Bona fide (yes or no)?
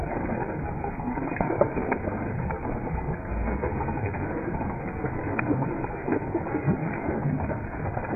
no